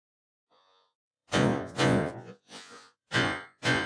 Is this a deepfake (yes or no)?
yes